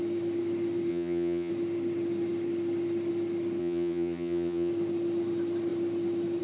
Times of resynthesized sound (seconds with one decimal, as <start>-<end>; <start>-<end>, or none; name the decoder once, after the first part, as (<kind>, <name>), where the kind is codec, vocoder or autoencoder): 0.9-1.5 (vocoder, HiFi-GAN); 3.6-4.7